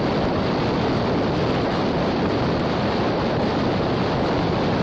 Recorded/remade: recorded